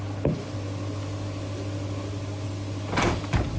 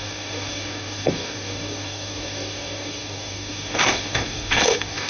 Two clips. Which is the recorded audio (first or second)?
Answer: first